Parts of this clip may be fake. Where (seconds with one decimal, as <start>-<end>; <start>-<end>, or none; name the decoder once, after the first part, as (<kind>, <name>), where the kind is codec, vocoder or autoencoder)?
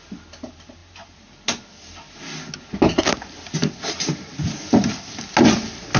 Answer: none